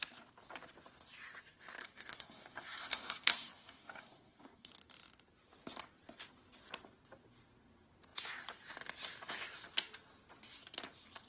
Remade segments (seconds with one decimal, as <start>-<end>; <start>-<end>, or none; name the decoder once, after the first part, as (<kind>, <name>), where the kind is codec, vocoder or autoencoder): 1.8-4.7 (codec, SNAC)